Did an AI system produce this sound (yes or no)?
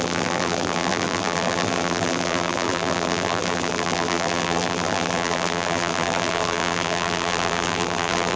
yes